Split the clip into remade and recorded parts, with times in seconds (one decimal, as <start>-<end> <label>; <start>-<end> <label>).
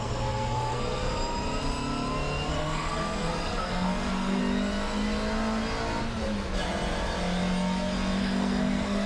0.0-1.0 remade; 1.0-2.5 recorded; 2.5-4.4 remade; 4.4-8.2 recorded; 8.2-9.1 remade